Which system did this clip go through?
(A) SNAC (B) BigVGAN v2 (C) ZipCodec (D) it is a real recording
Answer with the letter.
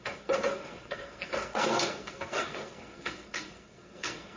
A